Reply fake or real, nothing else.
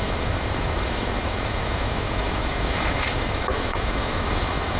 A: fake